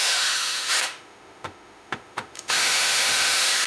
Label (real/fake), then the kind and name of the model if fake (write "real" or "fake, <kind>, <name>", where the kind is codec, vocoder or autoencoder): fake, autoencoder, DAC-VAE